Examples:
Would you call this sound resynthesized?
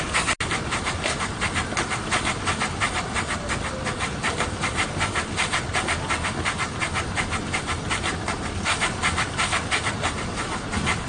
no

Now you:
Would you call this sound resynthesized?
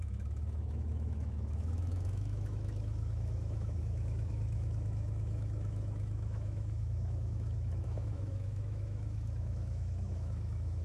yes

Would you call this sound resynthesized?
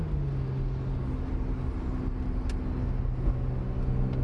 no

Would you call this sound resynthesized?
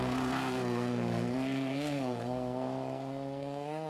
yes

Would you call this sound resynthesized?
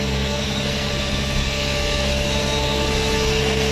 yes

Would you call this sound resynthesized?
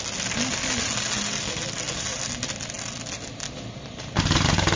no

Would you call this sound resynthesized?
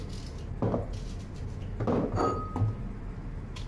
no